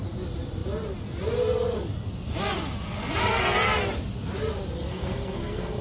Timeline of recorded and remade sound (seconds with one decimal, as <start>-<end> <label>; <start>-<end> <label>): 0.0-4.9 recorded; 4.9-5.8 remade